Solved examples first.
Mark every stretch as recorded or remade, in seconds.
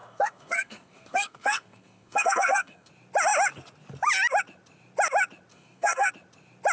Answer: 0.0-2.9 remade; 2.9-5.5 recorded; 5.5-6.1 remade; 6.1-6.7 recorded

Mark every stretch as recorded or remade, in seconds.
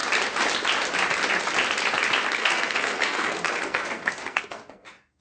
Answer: 0.0-2.4 recorded; 2.4-5.2 remade